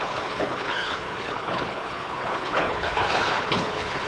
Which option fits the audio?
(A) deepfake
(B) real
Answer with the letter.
A